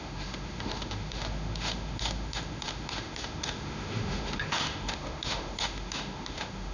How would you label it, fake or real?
fake